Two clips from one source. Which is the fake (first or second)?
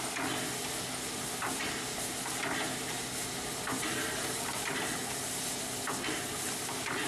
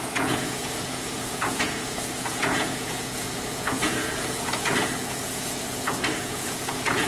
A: second